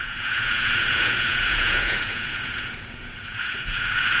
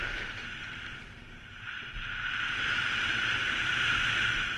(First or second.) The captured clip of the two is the second